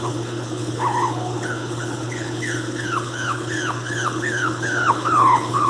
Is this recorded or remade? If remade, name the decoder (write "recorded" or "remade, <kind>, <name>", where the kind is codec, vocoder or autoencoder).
remade, codec, HILCodec